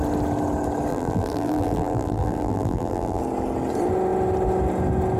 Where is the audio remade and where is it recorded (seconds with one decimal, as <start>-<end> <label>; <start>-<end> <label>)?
0.0-0.9 recorded; 0.9-3.2 remade; 3.2-5.2 recorded